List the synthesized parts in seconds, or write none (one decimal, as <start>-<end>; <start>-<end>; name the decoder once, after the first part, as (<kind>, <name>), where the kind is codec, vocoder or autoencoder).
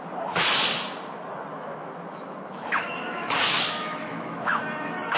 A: 1.5-4.6 (autoencoder, DAC-VAE)